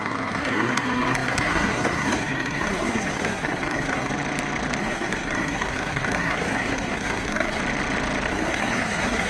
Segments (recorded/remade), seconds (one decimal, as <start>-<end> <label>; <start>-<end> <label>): 0.0-4.1 remade; 4.1-4.8 recorded; 4.8-7.6 remade; 7.6-8.3 recorded; 8.3-9.3 remade